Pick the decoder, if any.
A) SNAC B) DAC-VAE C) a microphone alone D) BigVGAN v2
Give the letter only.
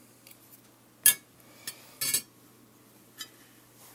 C